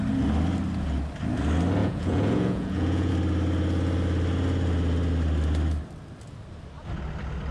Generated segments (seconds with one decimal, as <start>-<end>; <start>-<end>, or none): 1.8-3.1